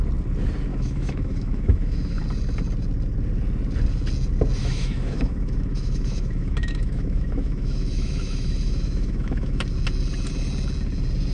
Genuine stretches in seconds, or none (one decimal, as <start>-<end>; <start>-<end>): 0.0-0.7; 2.2-4.6; 9.6-11.3